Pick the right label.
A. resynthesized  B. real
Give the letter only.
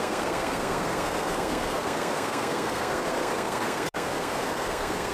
A